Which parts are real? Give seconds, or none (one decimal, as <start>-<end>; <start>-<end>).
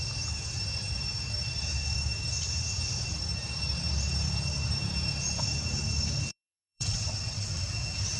0.0-6.3; 7.5-8.2